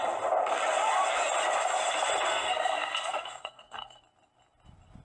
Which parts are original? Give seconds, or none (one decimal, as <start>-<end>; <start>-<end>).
0.0-2.3; 4.0-5.0